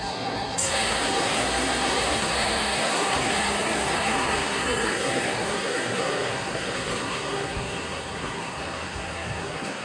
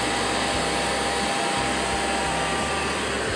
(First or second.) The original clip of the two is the second